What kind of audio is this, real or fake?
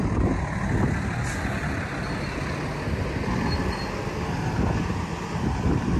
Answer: real